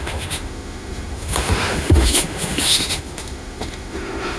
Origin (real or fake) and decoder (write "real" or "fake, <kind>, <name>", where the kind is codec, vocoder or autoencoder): fake, autoencoder, DAC-VAE